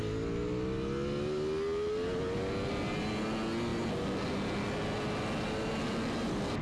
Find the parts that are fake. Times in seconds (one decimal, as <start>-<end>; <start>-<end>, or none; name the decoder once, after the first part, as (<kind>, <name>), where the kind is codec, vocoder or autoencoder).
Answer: none